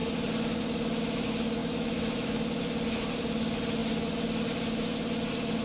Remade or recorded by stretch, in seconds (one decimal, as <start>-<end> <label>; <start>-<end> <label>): 0.0-1.6 recorded; 1.6-2.6 remade; 2.6-5.6 recorded